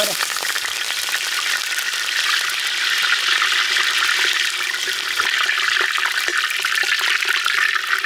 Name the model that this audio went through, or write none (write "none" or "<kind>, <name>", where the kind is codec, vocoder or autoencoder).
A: none